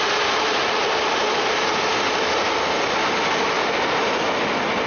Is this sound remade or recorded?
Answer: recorded